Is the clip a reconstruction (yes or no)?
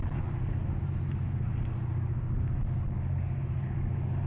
no